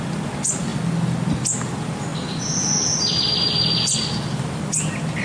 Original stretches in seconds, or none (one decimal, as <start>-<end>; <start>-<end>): 0.0-5.2